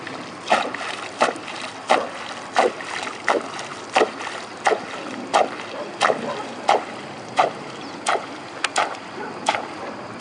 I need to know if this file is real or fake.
real